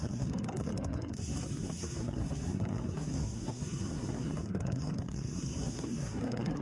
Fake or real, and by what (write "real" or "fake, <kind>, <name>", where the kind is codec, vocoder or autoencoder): fake, codec, SNAC